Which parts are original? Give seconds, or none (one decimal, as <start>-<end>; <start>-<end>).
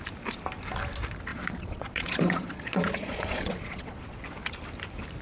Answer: 0.0-1.3; 4.1-5.2